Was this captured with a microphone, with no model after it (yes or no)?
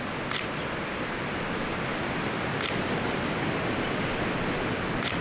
yes